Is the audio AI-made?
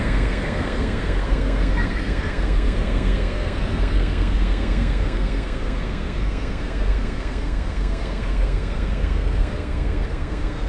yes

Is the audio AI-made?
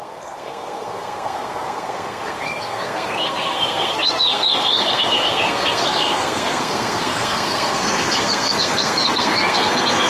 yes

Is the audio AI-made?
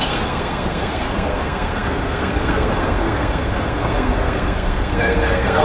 yes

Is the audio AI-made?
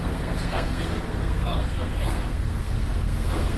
yes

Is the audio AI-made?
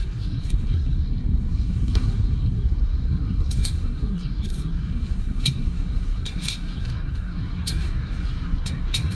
yes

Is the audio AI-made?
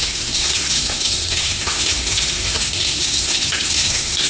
yes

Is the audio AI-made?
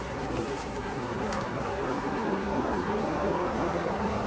yes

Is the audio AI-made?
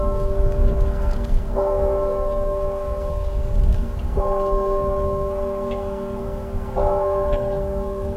yes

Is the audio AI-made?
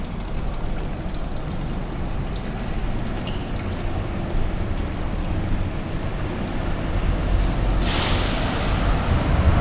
no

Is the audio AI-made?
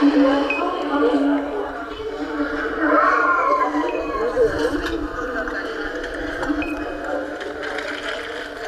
no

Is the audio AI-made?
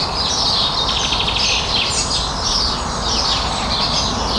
no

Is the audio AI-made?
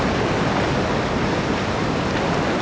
no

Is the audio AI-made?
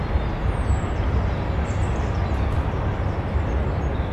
no